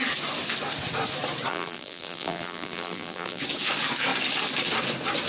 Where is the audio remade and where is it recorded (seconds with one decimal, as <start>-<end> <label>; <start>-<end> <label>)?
0.0-1.5 recorded; 1.5-3.4 remade; 3.4-5.3 recorded